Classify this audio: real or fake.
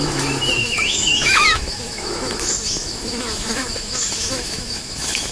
fake